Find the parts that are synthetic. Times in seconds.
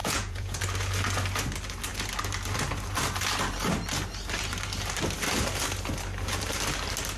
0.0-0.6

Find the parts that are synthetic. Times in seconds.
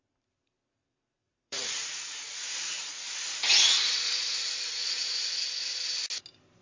1.3-5.3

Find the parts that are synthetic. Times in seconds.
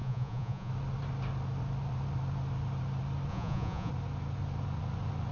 0.0-0.7; 3.3-3.9